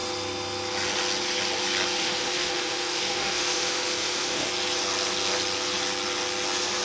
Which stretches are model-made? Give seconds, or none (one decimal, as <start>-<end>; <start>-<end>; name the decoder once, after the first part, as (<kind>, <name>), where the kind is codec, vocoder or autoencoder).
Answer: 2.0-4.5 (autoencoder, DAC-VAE)